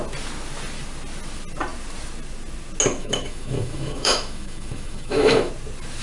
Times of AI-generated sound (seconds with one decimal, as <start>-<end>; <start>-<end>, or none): 3.0-5.5